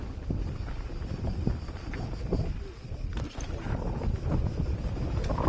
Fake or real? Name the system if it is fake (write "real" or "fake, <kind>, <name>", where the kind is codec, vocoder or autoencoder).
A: fake, vocoder, BigVGAN v2